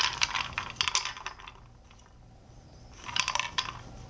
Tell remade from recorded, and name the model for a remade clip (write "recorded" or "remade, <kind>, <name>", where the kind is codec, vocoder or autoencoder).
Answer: recorded